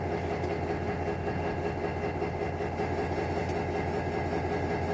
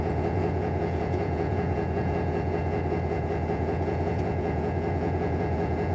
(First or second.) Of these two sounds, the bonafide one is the first